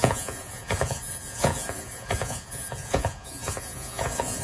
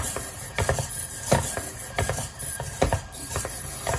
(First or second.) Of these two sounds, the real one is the second